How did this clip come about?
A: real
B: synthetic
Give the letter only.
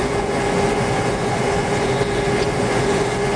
B